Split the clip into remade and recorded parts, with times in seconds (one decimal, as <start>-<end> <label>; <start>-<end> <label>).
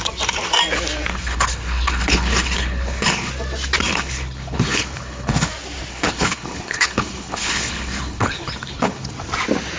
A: 0.0-1.1 recorded; 1.1-3.3 remade; 3.3-3.9 recorded; 3.9-5.5 remade; 5.5-5.9 recorded; 5.9-9.1 remade; 9.1-9.8 recorded